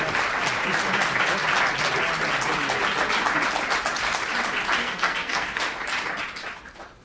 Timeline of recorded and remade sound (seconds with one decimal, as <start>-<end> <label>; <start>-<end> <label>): 0.0-4.8 recorded; 4.8-5.6 remade; 5.6-7.0 recorded